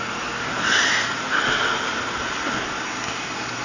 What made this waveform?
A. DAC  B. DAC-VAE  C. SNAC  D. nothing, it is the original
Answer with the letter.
D